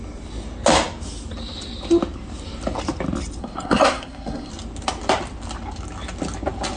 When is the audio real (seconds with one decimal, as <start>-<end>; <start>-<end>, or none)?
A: 0.0-3.4; 4.5-6.8